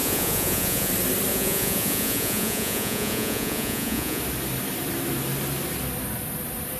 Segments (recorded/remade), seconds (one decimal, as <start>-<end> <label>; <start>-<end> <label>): 0.0-0.9 remade; 0.9-1.3 recorded; 1.3-4.2 remade; 4.2-6.8 recorded